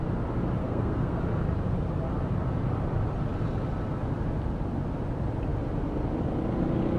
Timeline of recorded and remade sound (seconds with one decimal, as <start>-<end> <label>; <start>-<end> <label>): 0.0-0.6 recorded; 0.6-1.2 remade; 1.2-7.0 recorded